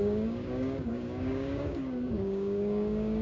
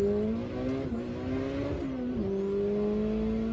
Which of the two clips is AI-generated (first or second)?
first